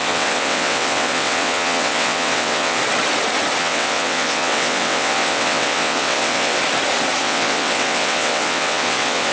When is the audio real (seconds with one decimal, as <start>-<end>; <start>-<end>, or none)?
2.8-3.6; 6.6-7.2